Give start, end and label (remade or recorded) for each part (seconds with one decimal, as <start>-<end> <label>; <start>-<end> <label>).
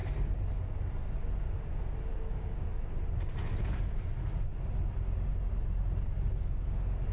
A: 0.0-2.1 recorded; 2.1-2.8 remade; 2.8-7.1 recorded